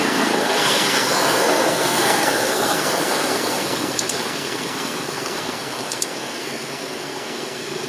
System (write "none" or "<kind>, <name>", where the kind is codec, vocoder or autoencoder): codec, SNAC